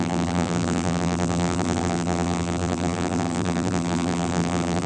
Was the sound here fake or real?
fake